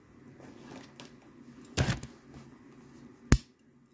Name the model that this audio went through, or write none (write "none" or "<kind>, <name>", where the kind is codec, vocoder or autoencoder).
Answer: none